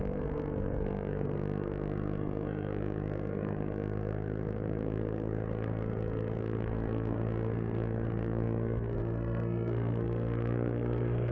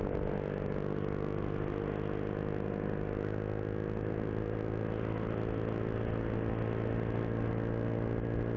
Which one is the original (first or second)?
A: second